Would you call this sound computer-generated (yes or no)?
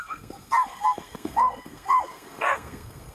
yes